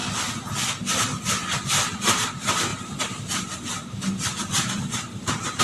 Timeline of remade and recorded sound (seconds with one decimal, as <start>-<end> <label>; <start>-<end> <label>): 0.0-1.2 recorded; 1.2-5.6 remade